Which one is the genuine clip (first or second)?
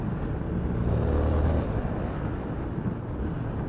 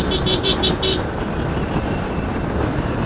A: first